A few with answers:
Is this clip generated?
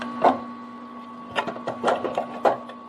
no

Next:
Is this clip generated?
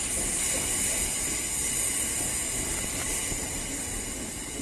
no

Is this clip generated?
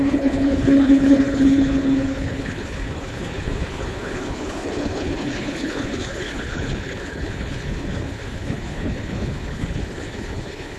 yes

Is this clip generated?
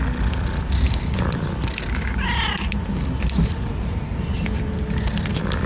no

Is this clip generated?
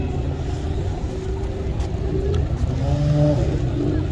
no